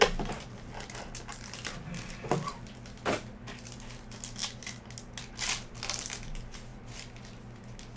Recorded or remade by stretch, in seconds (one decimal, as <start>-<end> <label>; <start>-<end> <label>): 0.0-8.0 recorded